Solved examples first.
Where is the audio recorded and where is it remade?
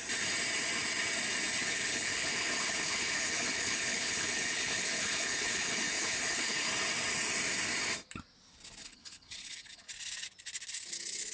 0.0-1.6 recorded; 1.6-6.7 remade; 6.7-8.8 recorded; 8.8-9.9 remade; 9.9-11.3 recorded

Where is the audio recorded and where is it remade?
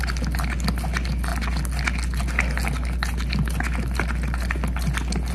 0.0-5.3 recorded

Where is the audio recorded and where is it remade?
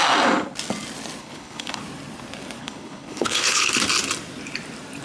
0.0-1.2 recorded; 1.2-1.8 remade; 1.8-2.6 recorded; 2.6-3.7 remade; 3.7-5.0 recorded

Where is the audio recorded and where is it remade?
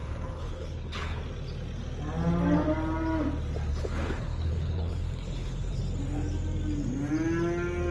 0.0-1.2 remade; 1.2-3.7 recorded; 3.7-5.8 remade; 5.8-7.9 recorded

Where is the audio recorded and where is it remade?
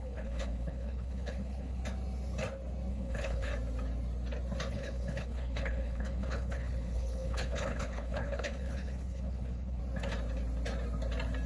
0.0-1.8 remade; 1.8-2.9 recorded; 2.9-3.5 remade; 3.5-4.7 recorded; 4.7-9.8 remade; 9.8-11.5 recorded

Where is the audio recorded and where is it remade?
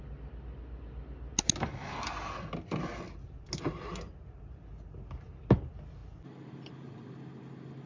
0.0-7.9 recorded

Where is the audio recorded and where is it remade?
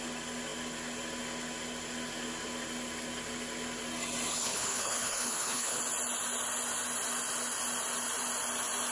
0.0-4.4 recorded; 4.4-5.8 remade; 5.8-8.9 recorded